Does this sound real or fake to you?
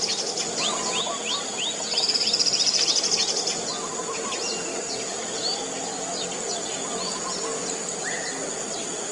real